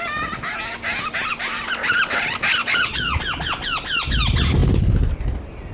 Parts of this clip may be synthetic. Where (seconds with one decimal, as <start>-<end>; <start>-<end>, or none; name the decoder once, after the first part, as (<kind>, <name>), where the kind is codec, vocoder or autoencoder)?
2.6-3.2 (vocoder, Vocos)